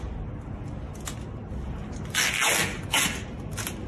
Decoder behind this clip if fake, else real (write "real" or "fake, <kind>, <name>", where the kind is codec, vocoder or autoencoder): real